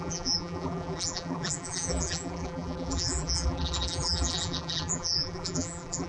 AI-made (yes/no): yes